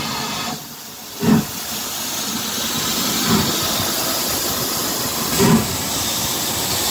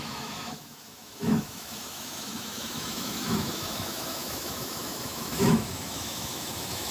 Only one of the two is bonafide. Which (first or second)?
first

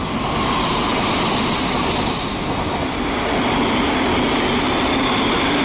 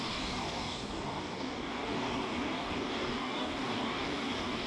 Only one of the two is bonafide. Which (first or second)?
first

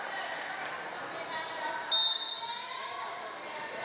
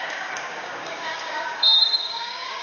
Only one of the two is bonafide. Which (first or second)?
first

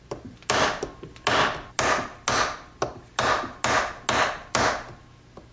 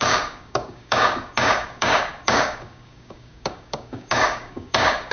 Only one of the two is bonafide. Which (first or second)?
first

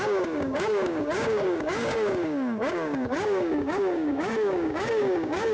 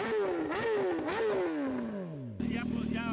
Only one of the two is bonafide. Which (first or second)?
second